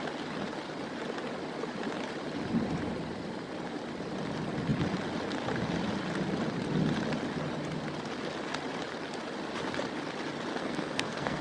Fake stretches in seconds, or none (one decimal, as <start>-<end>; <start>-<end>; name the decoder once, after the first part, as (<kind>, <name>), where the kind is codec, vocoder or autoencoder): 10.5-11.4 (codec, SNAC)